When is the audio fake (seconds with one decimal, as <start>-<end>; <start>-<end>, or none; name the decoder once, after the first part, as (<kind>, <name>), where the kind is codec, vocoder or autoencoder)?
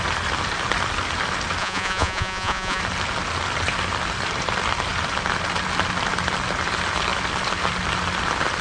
1.6-2.8 (vocoder, Vocos)